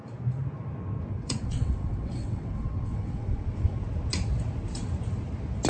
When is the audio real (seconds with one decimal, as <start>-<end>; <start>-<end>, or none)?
0.0-1.1; 3.8-5.7

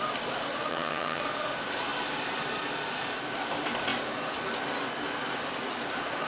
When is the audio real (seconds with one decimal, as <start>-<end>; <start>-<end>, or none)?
0.0-0.7; 1.2-6.3

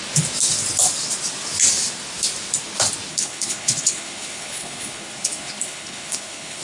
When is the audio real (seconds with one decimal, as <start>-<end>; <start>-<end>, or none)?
0.0-3.1

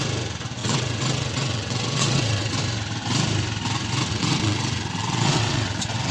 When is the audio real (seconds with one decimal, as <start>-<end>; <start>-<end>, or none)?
0.0-0.6; 2.6-4.1